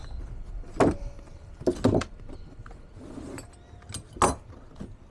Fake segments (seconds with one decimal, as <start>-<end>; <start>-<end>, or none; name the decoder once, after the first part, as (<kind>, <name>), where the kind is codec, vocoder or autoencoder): none